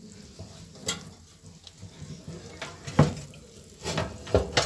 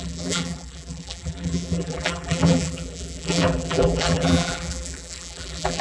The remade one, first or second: second